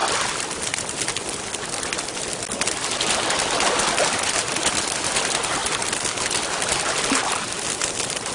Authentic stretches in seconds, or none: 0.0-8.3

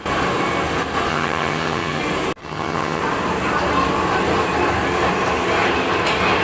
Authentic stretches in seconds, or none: 0.0-1.1; 2.0-2.4; 3.0-6.4

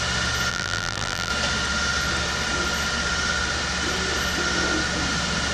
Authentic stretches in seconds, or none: 0.0-0.5; 1.3-5.5

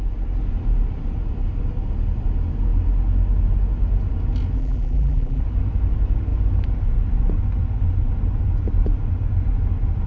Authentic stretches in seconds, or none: 0.0-4.6; 5.4-10.1